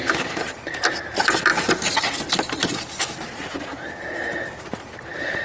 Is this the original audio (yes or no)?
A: yes